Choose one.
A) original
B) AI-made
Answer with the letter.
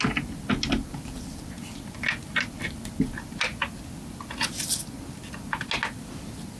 A